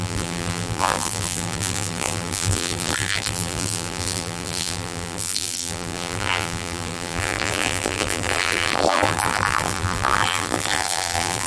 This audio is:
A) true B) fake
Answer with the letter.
B